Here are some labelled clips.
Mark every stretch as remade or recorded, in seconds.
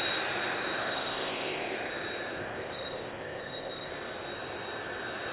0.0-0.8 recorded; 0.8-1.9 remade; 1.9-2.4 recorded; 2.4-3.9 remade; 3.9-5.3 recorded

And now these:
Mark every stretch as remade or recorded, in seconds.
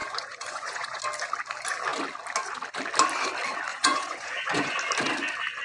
0.0-1.0 remade; 1.0-3.7 recorded; 3.7-4.8 remade; 4.8-5.6 recorded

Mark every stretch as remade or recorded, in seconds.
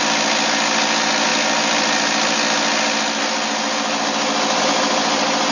0.0-5.5 recorded